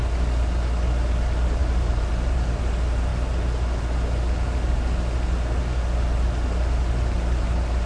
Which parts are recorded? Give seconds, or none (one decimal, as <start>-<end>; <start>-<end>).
0.0-1.6; 2.6-7.9